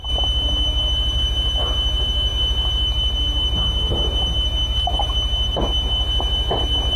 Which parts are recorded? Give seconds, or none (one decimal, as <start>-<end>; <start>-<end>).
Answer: 0.0-7.0